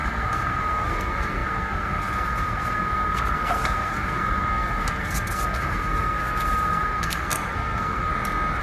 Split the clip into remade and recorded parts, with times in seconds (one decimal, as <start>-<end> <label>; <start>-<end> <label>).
0.0-8.1 remade; 8.1-8.6 recorded